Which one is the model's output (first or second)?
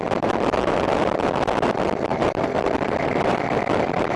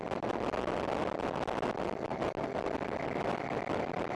first